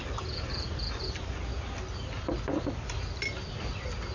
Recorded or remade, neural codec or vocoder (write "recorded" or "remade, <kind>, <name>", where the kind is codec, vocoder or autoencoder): recorded